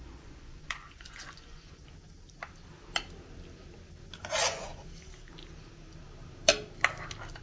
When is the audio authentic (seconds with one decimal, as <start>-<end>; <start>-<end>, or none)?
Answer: 1.8-4.2; 4.7-7.4